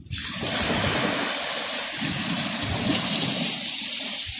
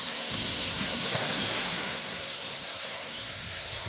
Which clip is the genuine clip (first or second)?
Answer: first